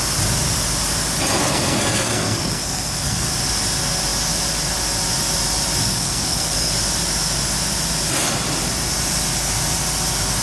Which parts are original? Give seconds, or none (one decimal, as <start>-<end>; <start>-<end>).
0.0-1.4; 3.3-5.9; 6.7-10.4